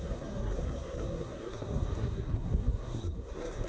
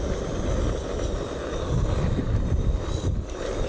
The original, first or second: second